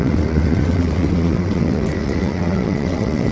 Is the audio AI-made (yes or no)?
yes